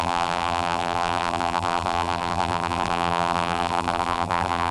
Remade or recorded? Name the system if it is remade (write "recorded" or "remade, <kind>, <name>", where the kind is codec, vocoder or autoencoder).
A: remade, vocoder, BigVGAN v2